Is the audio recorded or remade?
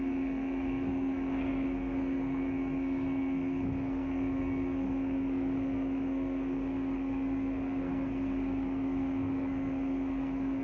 remade